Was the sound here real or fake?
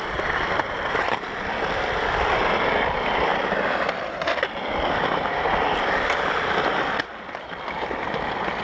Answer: fake